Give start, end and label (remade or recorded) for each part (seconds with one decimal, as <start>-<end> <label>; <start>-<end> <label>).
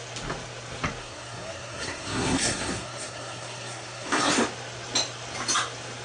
0.0-1.0 recorded; 1.0-4.3 remade; 4.3-6.0 recorded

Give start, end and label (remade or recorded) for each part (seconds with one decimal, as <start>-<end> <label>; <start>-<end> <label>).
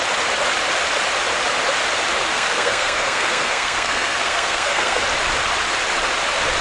0.0-2.3 recorded; 2.3-5.0 remade; 5.0-6.6 recorded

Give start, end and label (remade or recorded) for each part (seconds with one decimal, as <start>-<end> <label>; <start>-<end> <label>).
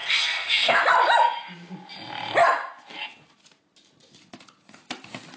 0.0-0.8 remade; 0.8-5.4 recorded